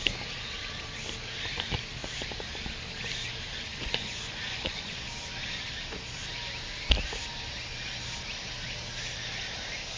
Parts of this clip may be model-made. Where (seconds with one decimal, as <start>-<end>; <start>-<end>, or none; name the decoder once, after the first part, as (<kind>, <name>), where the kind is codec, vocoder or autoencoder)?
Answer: 3.7-5.0 (vocoder, Vocos)